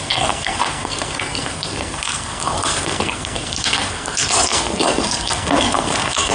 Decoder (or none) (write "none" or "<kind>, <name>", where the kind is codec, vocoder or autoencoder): codec, SNAC